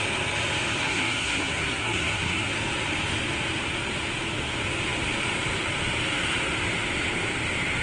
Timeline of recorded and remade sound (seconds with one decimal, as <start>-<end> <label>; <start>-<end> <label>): 0.0-0.8 recorded; 0.8-2.5 remade; 2.5-7.8 recorded